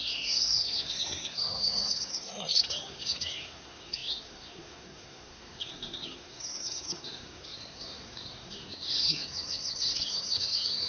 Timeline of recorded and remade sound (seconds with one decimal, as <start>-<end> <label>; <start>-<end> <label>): 0.0-10.9 remade